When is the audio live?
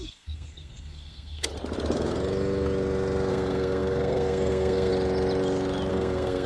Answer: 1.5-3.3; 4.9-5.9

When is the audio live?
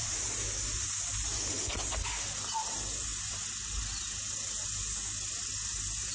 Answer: 0.0-6.1